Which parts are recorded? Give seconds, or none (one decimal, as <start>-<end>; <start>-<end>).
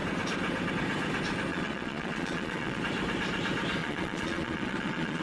0.0-1.5; 2.8-3.8